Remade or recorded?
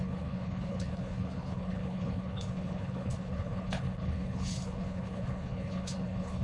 remade